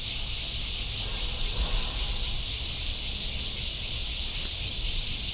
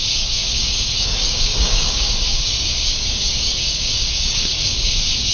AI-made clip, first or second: second